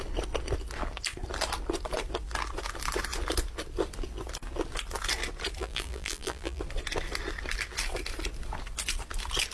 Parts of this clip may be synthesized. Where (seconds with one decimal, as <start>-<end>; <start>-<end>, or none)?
5.6-6.6